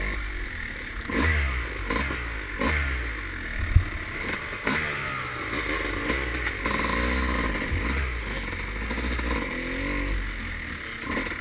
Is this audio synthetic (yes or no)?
no